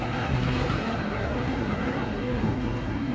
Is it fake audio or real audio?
fake